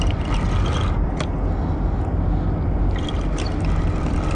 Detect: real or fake real